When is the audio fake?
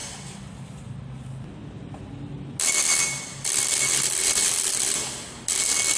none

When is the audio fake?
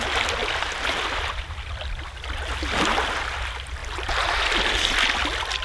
none